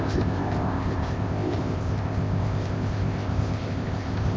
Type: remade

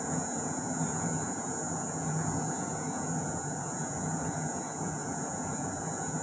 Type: remade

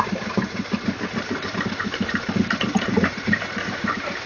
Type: remade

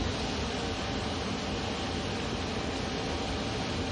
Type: recorded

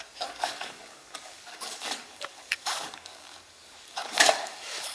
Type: remade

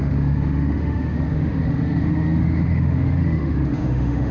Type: remade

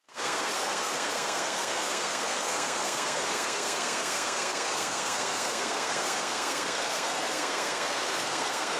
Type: remade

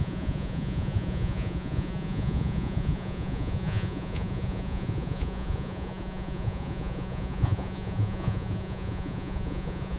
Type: remade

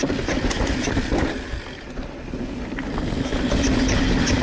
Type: recorded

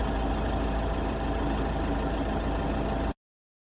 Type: recorded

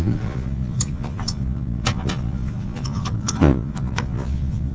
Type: remade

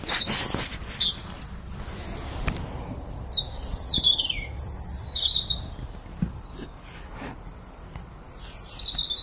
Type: recorded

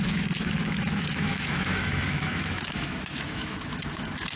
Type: remade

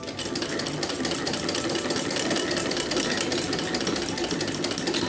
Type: recorded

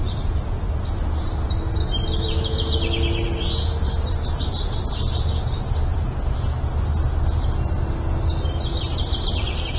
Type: recorded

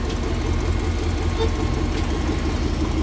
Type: recorded